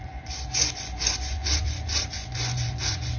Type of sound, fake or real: fake